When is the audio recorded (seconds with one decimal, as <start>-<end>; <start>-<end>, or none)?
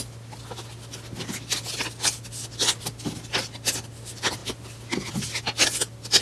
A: 0.0-6.2